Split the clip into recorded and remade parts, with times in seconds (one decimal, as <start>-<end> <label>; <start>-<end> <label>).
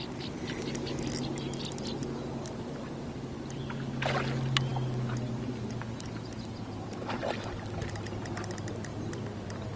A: 0.0-9.8 recorded